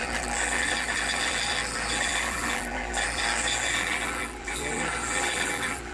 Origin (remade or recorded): remade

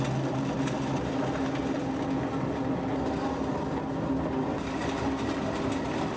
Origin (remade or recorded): recorded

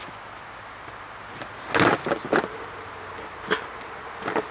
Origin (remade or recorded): recorded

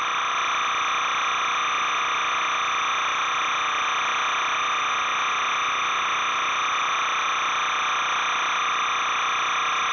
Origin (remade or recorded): recorded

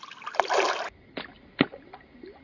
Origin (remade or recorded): recorded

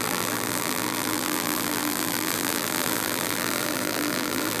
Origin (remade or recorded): remade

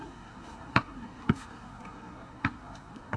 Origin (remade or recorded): remade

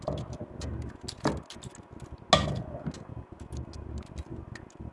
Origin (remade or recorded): recorded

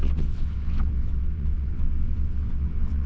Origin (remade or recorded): remade